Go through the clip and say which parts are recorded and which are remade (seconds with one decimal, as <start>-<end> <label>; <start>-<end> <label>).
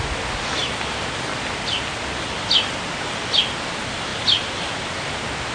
0.0-5.5 recorded